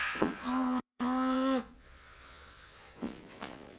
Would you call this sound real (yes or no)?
no